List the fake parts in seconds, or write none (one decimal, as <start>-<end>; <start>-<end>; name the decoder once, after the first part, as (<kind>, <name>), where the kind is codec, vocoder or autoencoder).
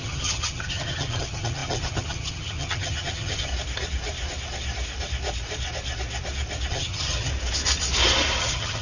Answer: 0.0-3.5 (vocoder, HiFi-GAN); 6.7-7.3; 8.4-8.8